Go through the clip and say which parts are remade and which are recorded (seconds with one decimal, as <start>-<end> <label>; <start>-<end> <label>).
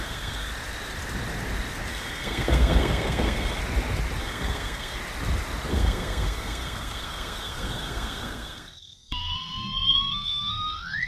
0.0-0.5 remade; 0.5-1.9 recorded; 1.9-3.6 remade; 3.6-4.2 recorded; 4.2-5.0 remade; 5.0-5.7 recorded; 5.7-11.1 remade